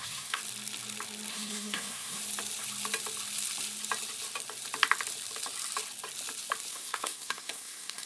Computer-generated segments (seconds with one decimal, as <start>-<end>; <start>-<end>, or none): 0.0-0.4; 1.3-2.2; 6.7-8.1